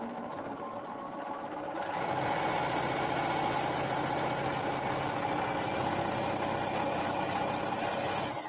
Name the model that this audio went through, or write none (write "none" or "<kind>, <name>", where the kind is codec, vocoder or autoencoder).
none